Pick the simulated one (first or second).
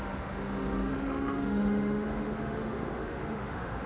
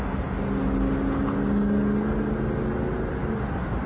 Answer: first